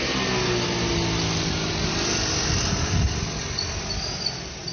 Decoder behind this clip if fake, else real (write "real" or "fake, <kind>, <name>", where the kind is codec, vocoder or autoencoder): real